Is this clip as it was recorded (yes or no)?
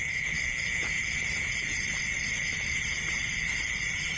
yes